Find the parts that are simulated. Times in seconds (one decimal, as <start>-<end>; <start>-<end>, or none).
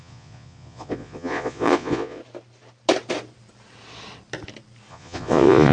0.0-2.2; 4.9-5.7